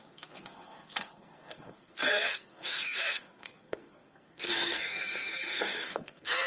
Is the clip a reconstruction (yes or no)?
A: yes